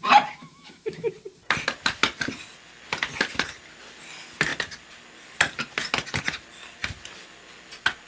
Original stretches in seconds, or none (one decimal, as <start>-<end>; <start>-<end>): 0.0-0.4; 1.1-8.1

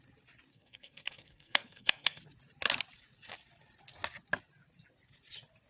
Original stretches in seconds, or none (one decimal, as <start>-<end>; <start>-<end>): 0.0-0.5; 2.2-5.7

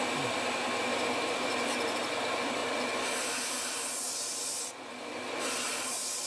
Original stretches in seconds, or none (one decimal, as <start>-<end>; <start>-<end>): 0.0-6.3

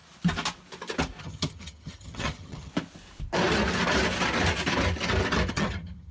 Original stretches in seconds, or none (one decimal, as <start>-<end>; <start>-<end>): 0.0-1.2; 2.7-5.5

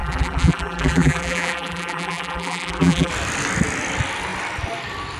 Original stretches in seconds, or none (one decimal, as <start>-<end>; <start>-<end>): 3.1-5.2